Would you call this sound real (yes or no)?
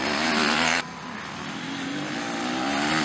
yes